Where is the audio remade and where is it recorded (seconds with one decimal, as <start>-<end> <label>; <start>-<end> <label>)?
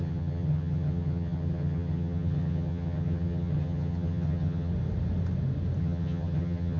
0.0-4.7 remade; 4.7-5.8 recorded; 5.8-6.8 remade